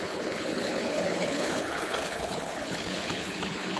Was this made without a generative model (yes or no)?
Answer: no